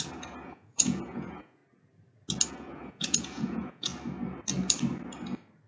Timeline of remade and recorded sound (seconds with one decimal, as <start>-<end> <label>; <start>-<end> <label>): 0.0-1.6 remade; 1.6-2.5 recorded; 2.5-3.9 remade; 3.9-5.7 recorded